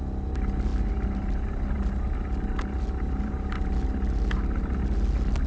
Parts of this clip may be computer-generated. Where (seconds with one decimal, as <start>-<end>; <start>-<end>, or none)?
none